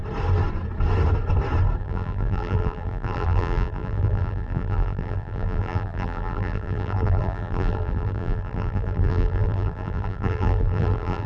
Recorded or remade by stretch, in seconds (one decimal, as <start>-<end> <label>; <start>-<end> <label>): 0.0-1.8 recorded; 1.8-11.3 remade